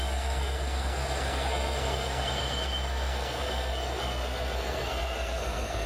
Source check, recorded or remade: remade